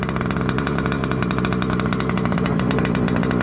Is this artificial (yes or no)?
no